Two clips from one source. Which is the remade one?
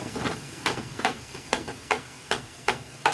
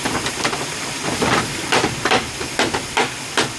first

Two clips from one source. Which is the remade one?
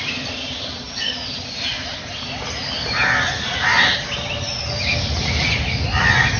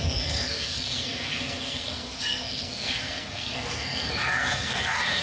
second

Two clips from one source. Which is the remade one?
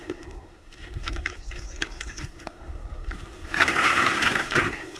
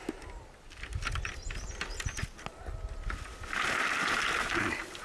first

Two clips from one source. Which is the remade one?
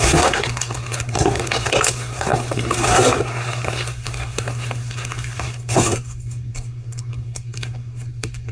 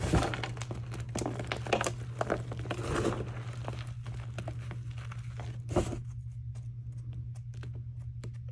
first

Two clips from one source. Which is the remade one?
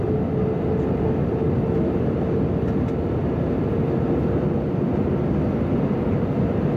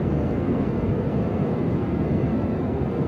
second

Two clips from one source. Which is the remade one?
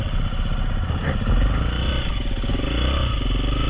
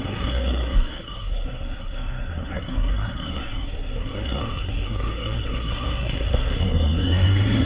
second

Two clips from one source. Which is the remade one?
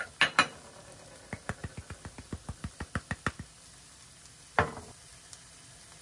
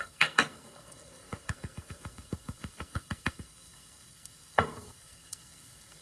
second